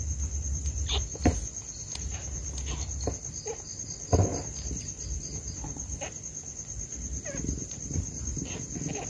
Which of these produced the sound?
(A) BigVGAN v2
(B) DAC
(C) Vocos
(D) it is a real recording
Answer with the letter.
D